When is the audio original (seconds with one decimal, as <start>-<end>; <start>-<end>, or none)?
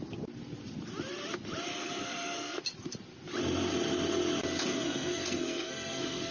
0.0-1.7; 2.6-4.7